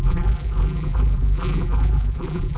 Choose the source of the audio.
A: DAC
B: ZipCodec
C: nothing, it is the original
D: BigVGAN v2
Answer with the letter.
D